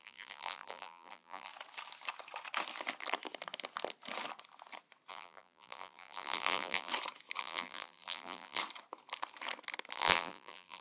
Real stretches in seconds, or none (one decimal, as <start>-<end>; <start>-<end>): 1.5-5.1; 6.9-7.4; 8.6-9.9